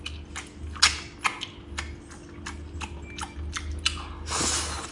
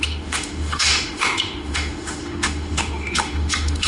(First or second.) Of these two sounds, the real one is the first